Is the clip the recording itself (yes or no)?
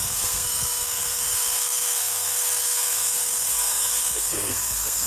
no